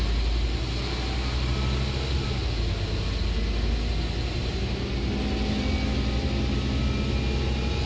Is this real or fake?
real